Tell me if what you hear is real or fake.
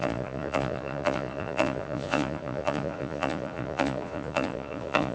fake